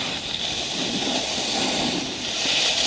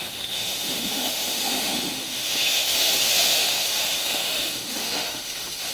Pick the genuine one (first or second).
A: first